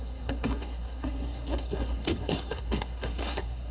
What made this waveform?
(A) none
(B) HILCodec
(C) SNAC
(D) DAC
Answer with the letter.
C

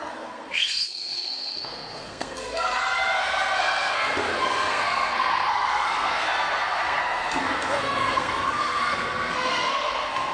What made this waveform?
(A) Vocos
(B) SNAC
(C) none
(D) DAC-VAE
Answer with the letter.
B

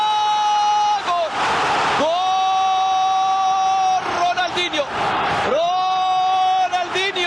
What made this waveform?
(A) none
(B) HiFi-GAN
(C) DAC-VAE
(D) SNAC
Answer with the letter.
A